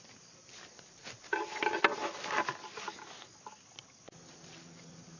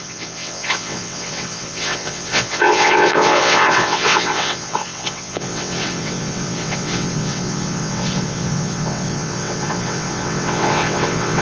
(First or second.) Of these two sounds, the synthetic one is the second